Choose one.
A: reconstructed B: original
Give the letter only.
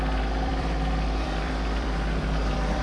A